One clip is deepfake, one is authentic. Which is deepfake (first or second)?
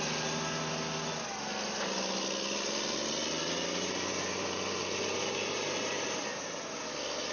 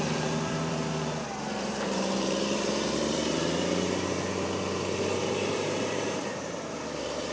second